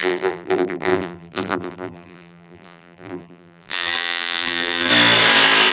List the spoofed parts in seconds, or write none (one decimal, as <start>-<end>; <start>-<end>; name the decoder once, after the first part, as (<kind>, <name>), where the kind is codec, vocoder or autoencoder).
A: 0.0-4.9 (vocoder, BigVGAN v2)